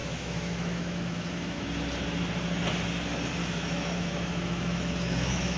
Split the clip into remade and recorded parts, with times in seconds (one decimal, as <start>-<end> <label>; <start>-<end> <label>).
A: 0.0-1.7 remade; 1.7-3.4 recorded; 3.4-5.6 remade